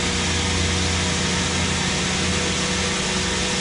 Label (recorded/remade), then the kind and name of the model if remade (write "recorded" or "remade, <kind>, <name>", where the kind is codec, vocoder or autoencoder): recorded